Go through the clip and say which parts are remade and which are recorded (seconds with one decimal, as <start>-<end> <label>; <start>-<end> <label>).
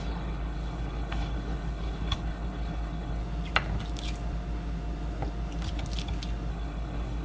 0.0-3.2 remade; 3.2-6.5 recorded; 6.5-7.2 remade